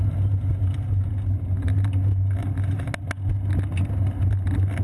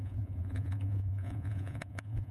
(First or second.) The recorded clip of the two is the first